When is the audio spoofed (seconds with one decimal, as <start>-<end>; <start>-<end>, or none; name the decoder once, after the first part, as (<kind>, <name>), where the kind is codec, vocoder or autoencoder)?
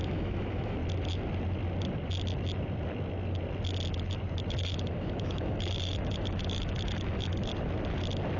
0.0-0.8 (autoencoder, DAC-VAE); 4.5-7.5